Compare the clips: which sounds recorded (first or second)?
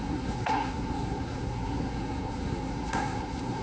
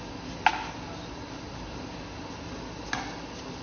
second